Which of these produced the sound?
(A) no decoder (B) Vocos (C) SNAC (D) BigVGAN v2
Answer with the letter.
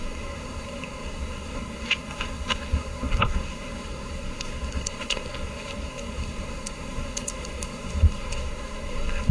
C